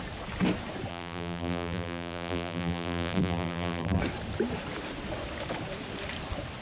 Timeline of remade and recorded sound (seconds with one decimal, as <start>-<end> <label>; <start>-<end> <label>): 0.0-0.9 recorded; 0.9-4.0 remade; 4.0-6.6 recorded